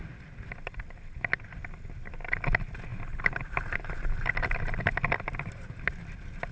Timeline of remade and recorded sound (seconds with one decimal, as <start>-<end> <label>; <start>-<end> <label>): 0.0-6.5 recorded